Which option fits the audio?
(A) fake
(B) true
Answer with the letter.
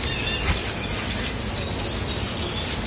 B